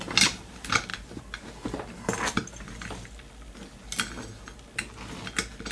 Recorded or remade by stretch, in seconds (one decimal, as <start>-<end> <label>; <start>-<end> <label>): 0.0-5.7 recorded